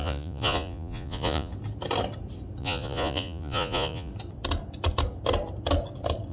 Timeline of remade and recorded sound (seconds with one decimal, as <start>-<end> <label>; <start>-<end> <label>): 0.0-1.5 remade; 1.5-2.6 recorded; 2.6-4.1 remade; 4.1-6.3 recorded